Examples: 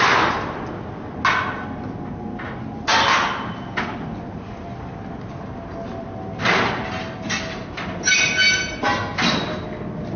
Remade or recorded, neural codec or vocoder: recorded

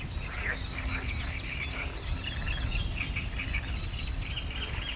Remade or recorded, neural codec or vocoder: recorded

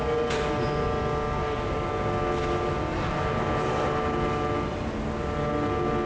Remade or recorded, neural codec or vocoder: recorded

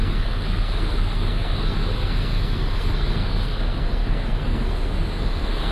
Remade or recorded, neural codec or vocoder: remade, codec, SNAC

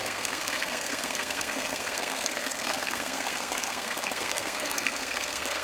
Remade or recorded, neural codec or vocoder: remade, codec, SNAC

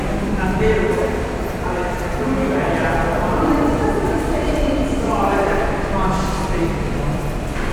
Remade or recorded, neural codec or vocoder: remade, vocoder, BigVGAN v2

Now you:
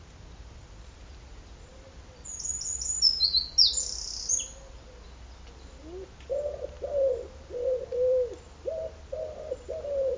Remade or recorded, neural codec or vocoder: recorded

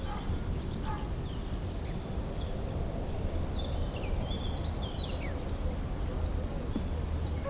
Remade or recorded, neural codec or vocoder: recorded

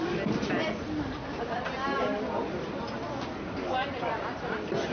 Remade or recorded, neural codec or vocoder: recorded